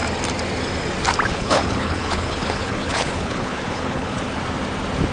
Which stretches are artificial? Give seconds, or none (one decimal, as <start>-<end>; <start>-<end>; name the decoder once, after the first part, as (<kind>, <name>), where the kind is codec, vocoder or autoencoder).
1.3-4.4 (codec, HILCodec)